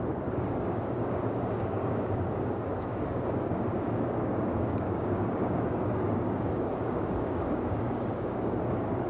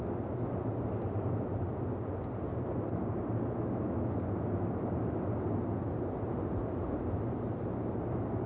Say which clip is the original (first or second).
second